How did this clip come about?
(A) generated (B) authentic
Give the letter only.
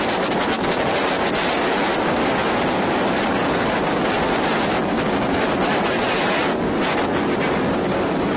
B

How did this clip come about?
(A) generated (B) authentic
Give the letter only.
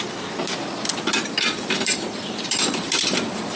A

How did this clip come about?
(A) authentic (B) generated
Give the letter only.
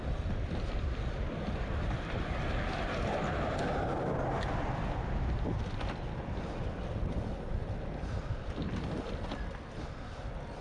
A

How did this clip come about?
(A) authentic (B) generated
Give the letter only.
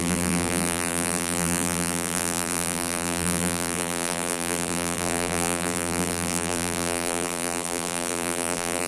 B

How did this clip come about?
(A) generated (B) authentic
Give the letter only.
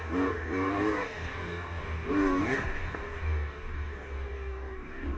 A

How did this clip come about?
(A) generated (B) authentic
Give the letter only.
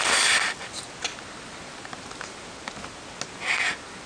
B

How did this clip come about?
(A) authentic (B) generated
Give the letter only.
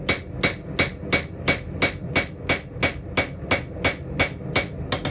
A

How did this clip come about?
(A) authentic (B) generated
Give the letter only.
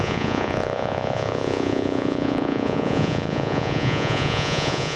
B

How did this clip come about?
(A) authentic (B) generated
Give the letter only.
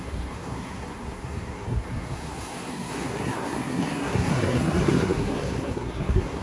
B